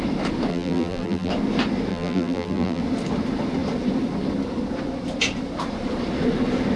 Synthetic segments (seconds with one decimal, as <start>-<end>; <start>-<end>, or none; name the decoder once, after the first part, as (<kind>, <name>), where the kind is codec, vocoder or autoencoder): 0.5-1.3 (vocoder, BigVGAN v2); 1.9-2.8